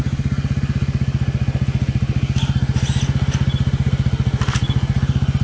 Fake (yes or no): no